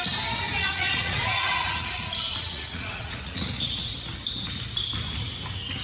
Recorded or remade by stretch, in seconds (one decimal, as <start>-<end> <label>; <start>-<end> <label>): 0.0-0.5 recorded; 0.5-4.0 remade; 4.0-5.8 recorded